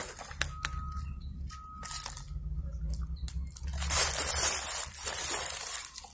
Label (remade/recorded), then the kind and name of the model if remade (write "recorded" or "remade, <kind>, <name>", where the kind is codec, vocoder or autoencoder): recorded